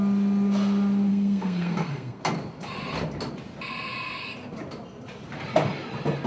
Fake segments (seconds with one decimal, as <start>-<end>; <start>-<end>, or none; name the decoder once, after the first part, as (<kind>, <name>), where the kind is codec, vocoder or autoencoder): 1.1-2.2 (codec, SNAC)